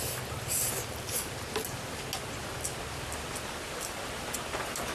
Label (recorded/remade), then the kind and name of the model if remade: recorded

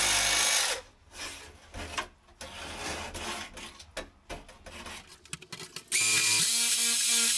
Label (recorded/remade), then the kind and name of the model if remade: recorded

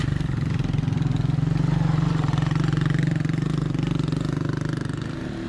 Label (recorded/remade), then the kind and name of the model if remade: recorded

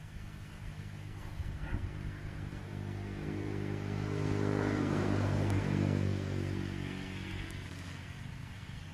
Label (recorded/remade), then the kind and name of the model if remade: remade, codec, SNAC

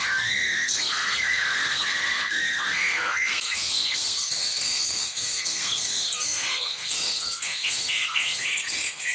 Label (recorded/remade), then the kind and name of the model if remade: remade, codec, SNAC